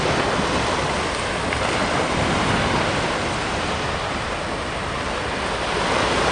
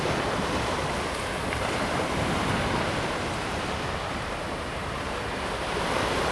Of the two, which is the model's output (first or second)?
second